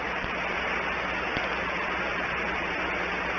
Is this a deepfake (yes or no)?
no